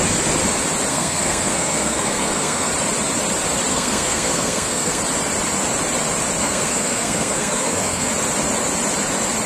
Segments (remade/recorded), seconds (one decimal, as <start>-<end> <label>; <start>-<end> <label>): 0.0-0.9 recorded; 0.9-2.7 remade; 2.7-3.7 recorded; 3.7-5.0 remade; 5.0-6.4 recorded; 6.4-8.1 remade; 8.1-9.5 recorded